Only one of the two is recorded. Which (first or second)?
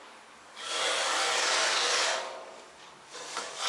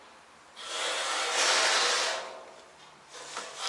second